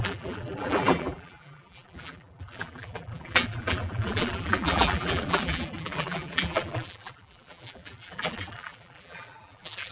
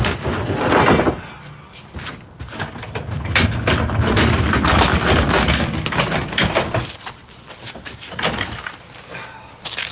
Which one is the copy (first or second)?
first